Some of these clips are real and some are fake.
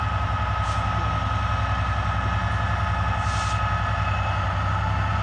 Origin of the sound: real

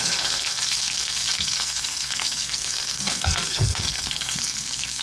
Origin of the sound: fake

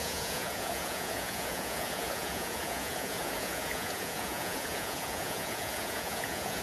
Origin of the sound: fake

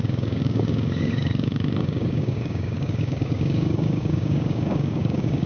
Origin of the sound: fake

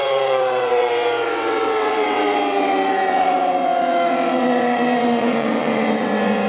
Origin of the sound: fake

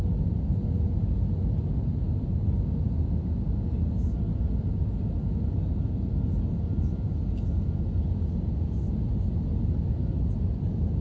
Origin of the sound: real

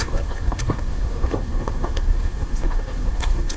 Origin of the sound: fake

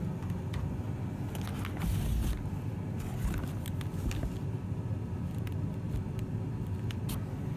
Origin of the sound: real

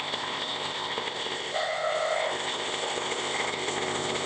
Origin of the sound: fake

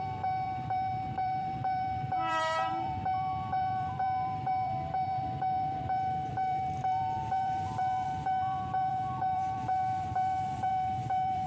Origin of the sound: fake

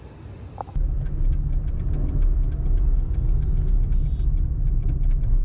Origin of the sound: real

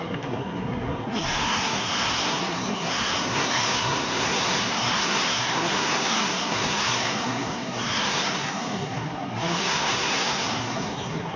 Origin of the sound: fake